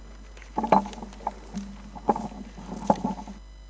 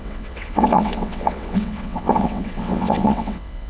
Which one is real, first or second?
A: first